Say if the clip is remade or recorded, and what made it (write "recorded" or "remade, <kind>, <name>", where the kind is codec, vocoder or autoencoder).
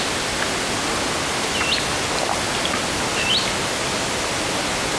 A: recorded